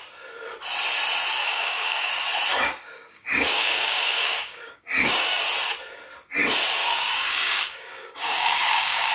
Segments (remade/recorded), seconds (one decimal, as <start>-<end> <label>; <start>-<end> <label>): 0.0-1.4 recorded; 1.4-2.1 remade; 2.1-2.5 recorded; 2.5-5.4 remade; 5.4-6.9 recorded; 6.9-9.1 remade